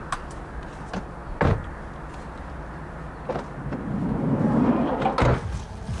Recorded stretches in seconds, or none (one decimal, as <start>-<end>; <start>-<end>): 0.0-6.0